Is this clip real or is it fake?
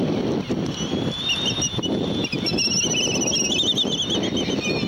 real